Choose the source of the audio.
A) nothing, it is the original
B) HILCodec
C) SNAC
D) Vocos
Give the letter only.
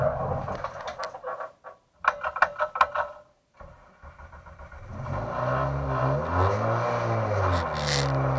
A